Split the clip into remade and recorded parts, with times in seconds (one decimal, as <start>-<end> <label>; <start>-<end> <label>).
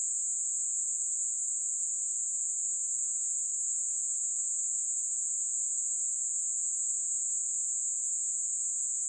0.0-9.1 remade